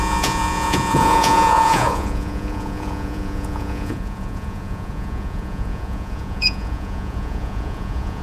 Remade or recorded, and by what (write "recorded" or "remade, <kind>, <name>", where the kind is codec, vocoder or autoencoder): remade, vocoder, Vocos